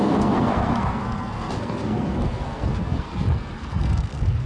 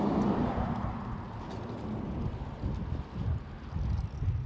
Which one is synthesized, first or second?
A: first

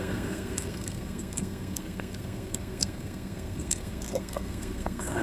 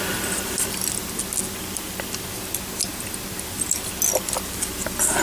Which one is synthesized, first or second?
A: first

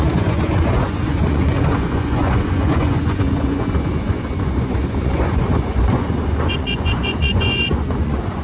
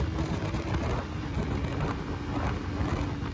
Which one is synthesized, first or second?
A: first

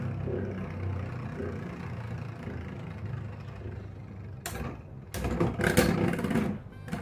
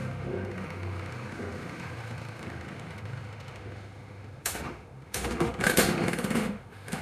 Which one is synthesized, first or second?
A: second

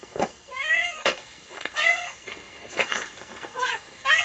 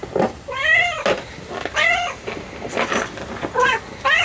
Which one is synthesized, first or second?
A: first